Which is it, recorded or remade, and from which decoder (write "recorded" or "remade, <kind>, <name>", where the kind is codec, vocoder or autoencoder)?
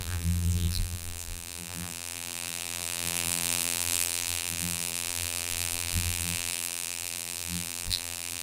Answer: remade, vocoder, BigVGAN v2